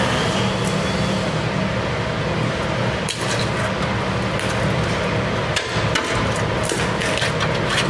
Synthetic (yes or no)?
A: no